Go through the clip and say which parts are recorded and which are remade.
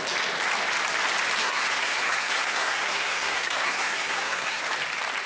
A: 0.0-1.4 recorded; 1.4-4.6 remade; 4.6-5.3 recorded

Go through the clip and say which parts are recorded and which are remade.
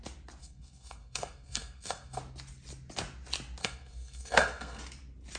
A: 0.0-0.4 recorded; 0.4-2.2 remade; 2.2-3.6 recorded; 3.6-4.8 remade; 4.8-5.4 recorded